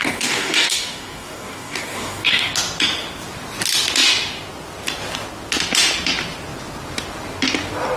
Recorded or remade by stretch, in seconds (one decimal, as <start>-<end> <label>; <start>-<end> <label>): 0.0-2.5 remade; 2.5-8.0 recorded